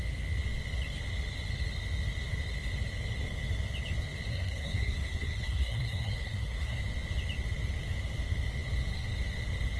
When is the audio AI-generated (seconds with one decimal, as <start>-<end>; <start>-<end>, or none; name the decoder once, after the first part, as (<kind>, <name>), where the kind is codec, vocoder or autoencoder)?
4.3-6.8 (codec, SNAC)